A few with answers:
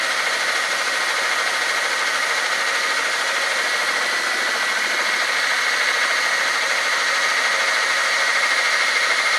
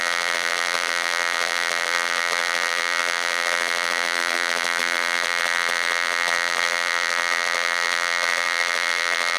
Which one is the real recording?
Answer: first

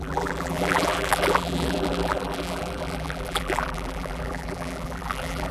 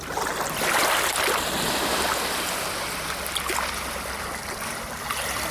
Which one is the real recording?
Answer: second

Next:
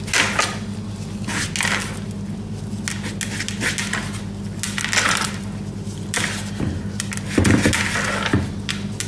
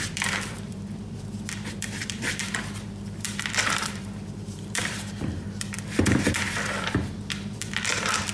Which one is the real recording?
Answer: first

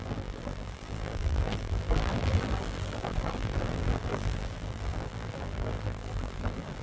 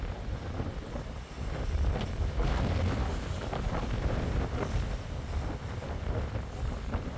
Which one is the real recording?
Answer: second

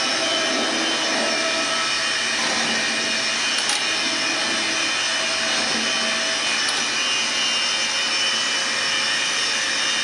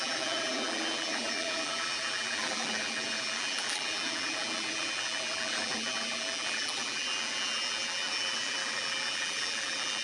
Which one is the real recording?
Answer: first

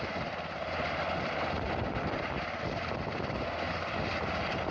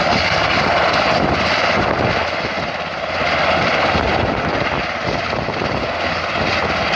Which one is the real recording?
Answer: second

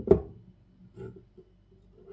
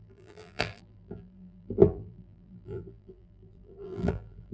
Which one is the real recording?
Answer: first